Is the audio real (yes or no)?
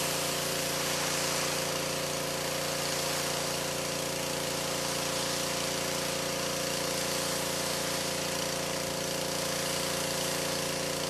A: yes